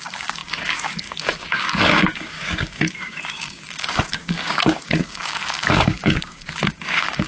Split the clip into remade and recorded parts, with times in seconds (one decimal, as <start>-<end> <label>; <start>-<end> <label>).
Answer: 0.0-7.3 remade